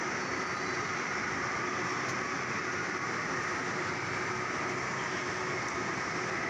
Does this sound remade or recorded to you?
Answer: recorded